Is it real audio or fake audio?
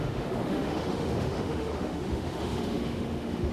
fake